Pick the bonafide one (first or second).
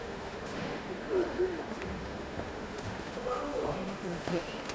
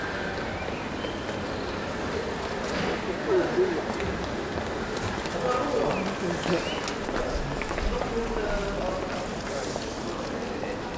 second